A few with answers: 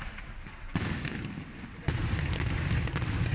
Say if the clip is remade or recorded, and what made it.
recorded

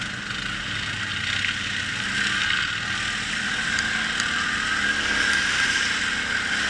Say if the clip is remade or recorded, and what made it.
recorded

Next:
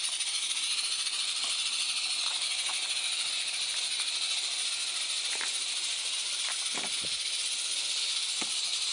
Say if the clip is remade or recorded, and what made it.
recorded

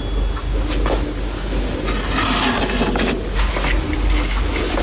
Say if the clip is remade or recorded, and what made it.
recorded